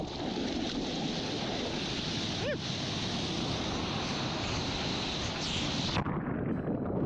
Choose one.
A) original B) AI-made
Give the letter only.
A